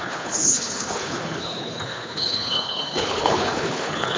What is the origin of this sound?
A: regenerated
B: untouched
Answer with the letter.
A